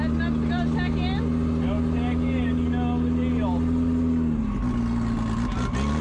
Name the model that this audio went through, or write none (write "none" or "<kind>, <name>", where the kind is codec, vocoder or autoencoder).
none